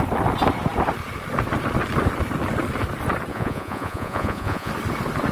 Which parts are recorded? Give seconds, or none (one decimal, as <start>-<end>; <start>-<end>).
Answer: 0.0-3.3; 4.7-5.3